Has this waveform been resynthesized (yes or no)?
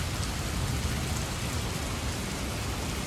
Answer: no